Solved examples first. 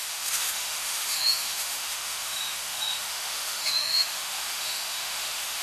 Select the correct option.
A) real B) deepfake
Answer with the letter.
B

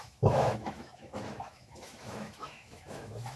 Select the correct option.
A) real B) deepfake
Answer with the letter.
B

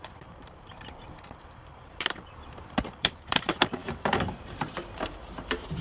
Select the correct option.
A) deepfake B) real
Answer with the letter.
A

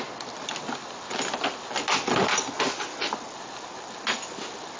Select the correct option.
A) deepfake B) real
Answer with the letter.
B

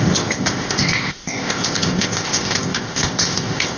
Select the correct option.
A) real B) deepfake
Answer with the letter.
B